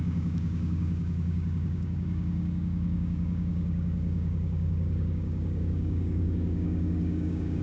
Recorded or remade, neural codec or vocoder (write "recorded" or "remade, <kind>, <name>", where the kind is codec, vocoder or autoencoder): remade, codec, DAC